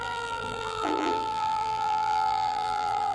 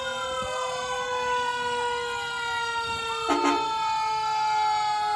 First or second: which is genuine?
second